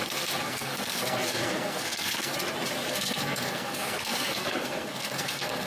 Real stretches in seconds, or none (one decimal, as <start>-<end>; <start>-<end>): 2.3-2.9